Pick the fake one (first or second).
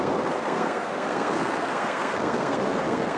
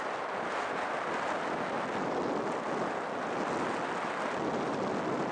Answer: first